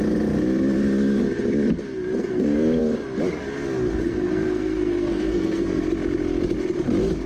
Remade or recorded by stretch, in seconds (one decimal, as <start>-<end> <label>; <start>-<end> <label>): 0.0-2.2 recorded; 2.2-2.8 remade; 2.8-4.0 recorded; 4.0-5.8 remade; 5.8-7.3 recorded